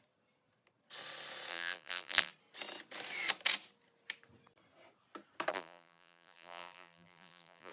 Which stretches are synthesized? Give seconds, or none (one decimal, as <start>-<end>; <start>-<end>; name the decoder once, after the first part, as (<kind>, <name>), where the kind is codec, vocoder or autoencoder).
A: 1.5-2.3 (vocoder, BigVGAN v2); 5.5-7.7

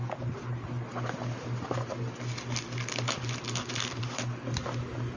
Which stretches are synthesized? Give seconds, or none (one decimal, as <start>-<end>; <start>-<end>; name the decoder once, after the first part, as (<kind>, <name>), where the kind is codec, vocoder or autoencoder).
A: none

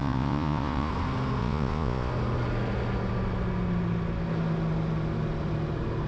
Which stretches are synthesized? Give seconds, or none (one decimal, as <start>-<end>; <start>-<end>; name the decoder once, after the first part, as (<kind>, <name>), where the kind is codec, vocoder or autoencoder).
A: 0.0-0.9 (vocoder, Vocos); 1.4-2.1

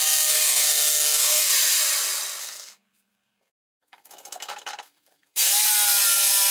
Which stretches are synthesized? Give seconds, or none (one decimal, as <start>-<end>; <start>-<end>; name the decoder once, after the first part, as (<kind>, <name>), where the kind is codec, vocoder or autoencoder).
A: 0.0-1.5 (codec, SNAC); 2.4-5.5

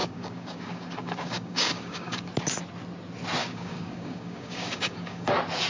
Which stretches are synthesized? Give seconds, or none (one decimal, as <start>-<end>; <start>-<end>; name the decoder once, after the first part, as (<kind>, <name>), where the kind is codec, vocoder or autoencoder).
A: 0.0-2.3 (codec, DAC); 3.4-5.3